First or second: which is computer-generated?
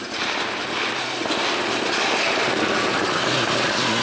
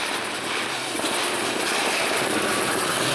second